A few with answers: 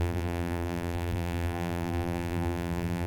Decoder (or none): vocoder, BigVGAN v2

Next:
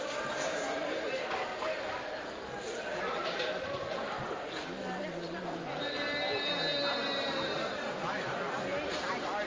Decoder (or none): none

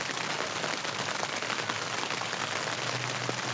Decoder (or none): none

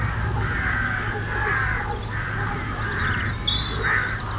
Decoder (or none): none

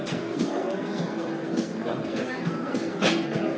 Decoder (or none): codec, SNAC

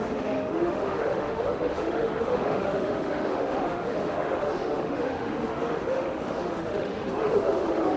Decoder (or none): autoencoder, DAC-VAE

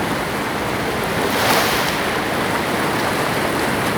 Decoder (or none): none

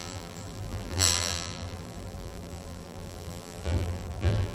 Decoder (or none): vocoder, BigVGAN v2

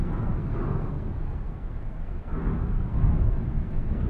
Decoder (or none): codec, SNAC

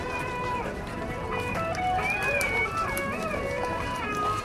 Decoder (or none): vocoder, BigVGAN v2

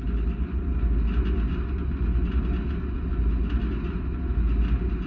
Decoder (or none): none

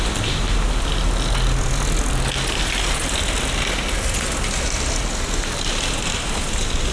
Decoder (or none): none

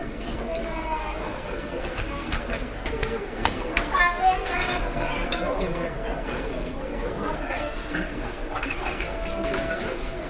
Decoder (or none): codec, SNAC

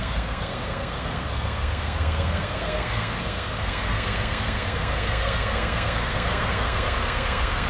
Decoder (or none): codec, SNAC